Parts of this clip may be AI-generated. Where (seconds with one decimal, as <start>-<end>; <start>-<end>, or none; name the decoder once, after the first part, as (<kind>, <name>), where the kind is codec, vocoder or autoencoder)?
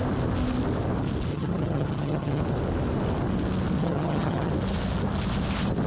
1.3-2.4 (vocoder, HiFi-GAN); 3.8-4.5